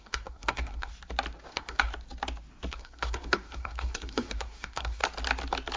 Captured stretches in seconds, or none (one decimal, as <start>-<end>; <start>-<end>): 0.9-1.5; 1.9-2.7; 5.0-5.8